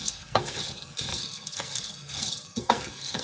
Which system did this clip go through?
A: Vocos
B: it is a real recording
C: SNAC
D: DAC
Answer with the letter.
C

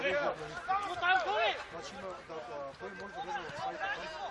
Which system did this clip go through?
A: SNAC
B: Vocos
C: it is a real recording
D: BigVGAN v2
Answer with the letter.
C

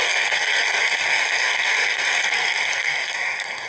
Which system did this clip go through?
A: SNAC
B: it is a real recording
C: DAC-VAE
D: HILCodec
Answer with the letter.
A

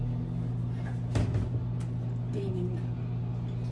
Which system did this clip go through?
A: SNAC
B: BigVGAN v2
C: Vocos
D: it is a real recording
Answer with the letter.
D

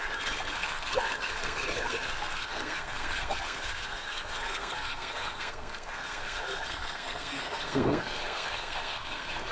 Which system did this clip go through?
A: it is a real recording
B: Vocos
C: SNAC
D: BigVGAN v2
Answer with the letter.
C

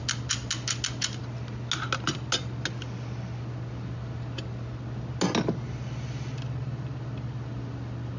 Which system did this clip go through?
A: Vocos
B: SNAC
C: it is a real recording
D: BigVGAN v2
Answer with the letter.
C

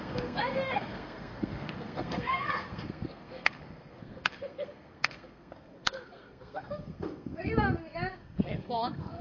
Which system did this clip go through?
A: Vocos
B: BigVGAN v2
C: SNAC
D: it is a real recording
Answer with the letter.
C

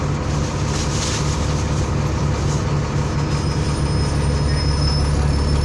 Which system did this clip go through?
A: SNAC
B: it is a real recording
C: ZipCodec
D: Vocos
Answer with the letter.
B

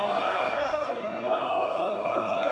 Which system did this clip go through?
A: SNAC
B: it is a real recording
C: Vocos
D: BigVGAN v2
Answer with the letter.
A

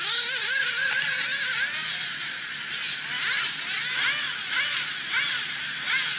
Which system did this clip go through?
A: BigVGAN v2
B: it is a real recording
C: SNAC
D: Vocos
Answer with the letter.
B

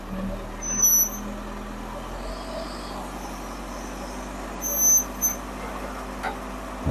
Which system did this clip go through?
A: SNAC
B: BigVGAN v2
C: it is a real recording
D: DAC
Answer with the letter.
C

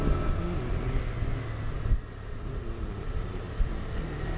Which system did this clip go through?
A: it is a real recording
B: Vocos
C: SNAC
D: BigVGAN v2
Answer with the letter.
A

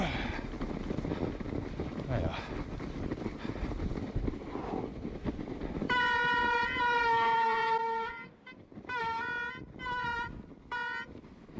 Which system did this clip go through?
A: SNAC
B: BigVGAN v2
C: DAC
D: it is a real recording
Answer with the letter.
D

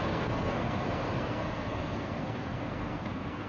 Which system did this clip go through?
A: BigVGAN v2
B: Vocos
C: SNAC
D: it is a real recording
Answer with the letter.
C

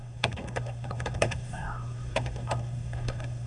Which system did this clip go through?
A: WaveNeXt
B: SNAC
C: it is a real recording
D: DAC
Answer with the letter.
B